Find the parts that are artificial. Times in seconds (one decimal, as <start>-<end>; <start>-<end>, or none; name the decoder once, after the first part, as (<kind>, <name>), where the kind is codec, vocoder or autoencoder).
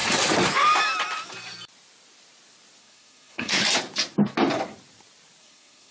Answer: 2.8-3.6 (codec, SNAC); 5.4-5.9